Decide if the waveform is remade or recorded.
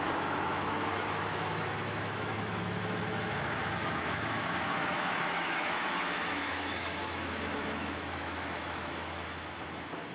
remade